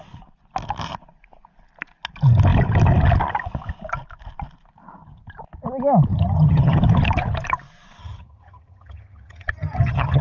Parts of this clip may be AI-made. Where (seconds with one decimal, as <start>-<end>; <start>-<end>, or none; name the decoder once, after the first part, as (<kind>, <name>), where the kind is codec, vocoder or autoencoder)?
6.1-6.8 (vocoder, HiFi-GAN); 8.0-10.2